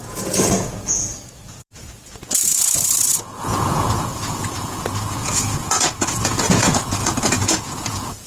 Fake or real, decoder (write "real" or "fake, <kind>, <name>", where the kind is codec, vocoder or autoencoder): fake, vocoder, Vocos